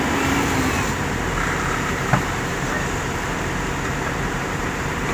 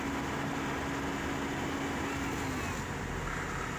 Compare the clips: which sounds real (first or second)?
second